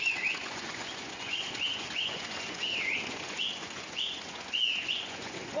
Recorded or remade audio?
remade